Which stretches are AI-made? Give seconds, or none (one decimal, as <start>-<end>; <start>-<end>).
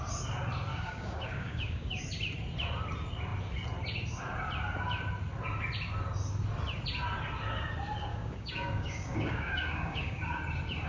0.7-1.9; 8.1-10.4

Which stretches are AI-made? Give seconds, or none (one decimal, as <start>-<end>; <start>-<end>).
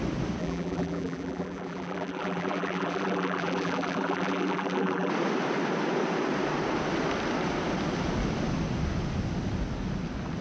0.4-5.1